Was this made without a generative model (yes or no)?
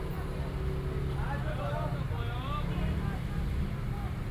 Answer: yes